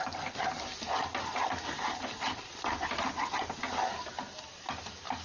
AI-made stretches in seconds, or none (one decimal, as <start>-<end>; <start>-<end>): none